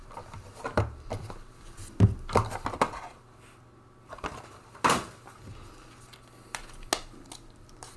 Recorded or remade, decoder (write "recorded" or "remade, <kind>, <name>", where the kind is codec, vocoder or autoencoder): recorded